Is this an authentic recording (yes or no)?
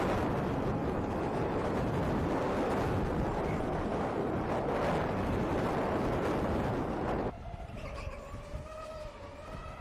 yes